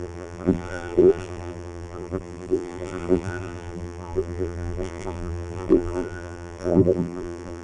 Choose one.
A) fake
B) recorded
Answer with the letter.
A